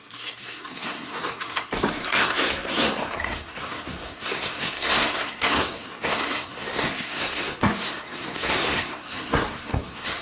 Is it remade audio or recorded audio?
remade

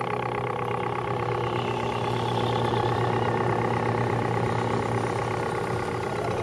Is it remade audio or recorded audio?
recorded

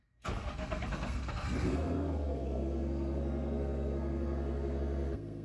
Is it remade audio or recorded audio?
remade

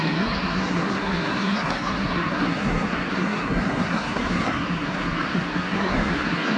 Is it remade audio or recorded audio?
remade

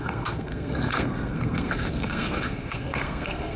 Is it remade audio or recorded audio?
remade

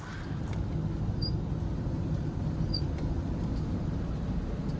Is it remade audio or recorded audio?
recorded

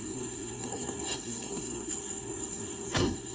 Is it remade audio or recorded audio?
remade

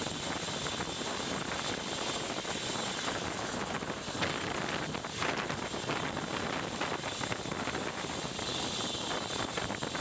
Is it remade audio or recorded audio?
recorded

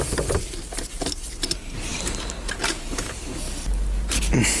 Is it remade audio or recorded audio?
recorded